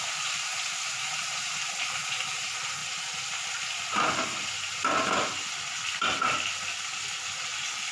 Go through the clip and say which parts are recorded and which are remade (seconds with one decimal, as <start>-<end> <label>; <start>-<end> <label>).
0.0-0.5 remade; 0.5-1.6 recorded; 1.6-2.8 remade; 2.8-7.4 recorded; 7.4-7.9 remade